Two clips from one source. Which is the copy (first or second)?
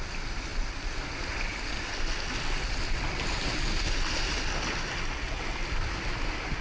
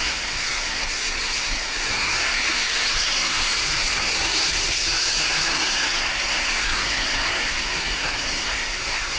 second